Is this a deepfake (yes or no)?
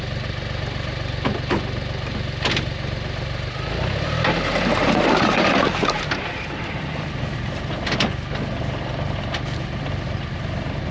no